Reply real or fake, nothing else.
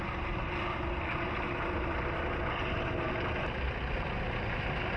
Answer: real